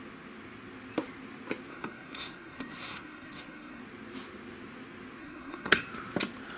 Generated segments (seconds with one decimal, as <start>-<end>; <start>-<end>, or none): 1.7-3.8; 5.2-5.8